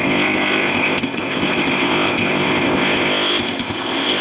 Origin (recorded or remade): remade